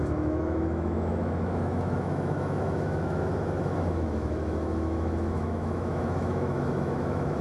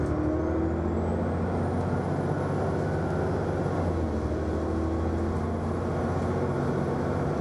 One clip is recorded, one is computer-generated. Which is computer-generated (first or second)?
first